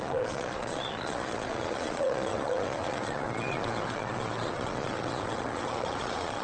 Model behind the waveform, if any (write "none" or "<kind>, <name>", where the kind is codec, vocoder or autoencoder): vocoder, Vocos